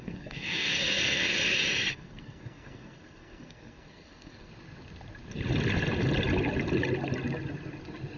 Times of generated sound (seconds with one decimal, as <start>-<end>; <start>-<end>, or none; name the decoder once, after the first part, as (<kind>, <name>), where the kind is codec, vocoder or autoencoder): 0.0-1.3 (codec, SNAC); 1.9-4.5